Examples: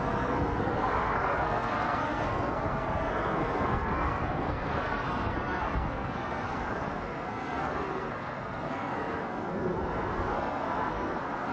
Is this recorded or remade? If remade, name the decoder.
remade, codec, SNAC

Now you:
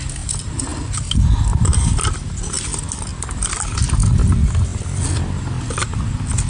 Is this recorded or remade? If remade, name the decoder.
recorded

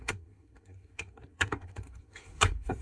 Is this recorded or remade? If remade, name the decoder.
remade, codec, SNAC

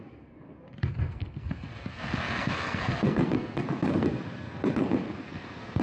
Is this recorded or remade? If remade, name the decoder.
remade, codec, SNAC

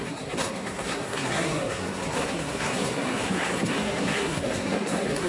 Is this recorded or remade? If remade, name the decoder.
remade, codec, SNAC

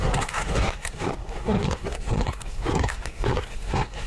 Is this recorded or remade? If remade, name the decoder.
remade, codec, SNAC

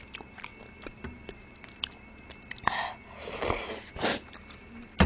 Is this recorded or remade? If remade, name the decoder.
recorded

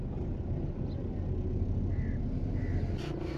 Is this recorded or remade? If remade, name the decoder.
recorded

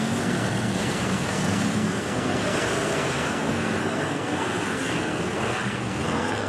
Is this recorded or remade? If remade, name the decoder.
remade, codec, SNAC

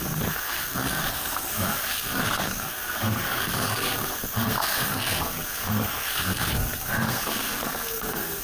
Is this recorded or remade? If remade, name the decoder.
remade, codec, SNAC